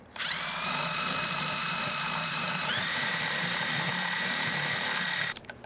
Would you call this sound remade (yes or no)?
yes